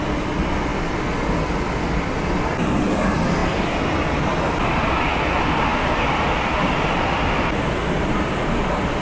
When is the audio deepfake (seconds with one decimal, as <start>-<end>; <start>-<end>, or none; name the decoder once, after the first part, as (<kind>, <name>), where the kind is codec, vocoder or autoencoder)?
none